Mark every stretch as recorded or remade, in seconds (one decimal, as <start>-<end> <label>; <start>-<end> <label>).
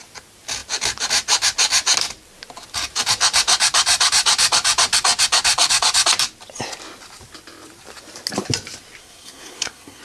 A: 0.0-9.0 recorded; 9.0-10.0 remade